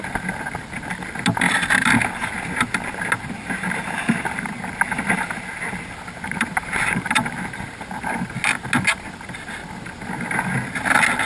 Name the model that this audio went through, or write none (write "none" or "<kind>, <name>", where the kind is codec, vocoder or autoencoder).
none